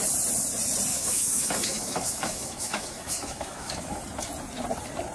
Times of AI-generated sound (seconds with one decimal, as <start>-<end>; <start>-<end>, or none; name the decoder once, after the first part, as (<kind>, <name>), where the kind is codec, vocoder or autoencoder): 0.9-4.0 (autoencoder, DAC-VAE)